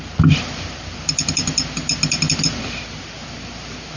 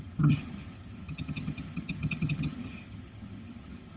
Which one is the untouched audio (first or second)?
first